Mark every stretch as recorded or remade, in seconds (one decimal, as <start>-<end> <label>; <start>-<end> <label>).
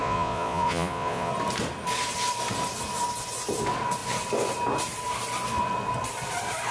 0.0-1.3 remade; 1.3-6.7 recorded